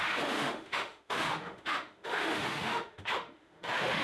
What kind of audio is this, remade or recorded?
remade